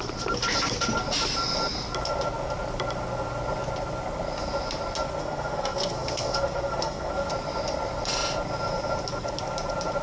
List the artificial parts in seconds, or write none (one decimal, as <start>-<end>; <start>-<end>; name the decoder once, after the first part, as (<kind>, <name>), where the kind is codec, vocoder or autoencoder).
5.2-7.3 (codec, SNAC)